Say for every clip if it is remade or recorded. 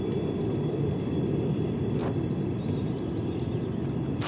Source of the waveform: recorded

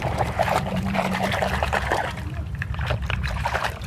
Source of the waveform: remade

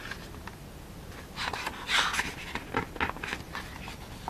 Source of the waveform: recorded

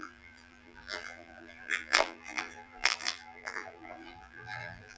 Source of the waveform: remade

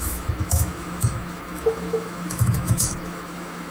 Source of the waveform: remade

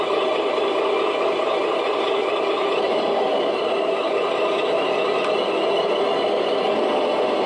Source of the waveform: recorded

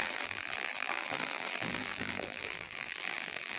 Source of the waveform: remade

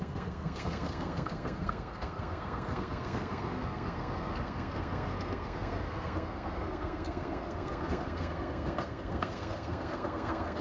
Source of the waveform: remade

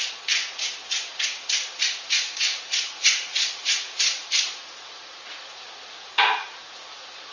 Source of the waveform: remade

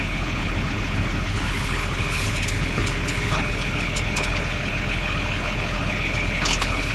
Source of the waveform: remade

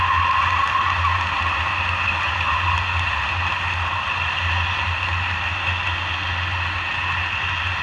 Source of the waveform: recorded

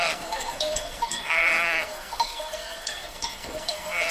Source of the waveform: remade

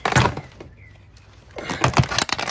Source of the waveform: recorded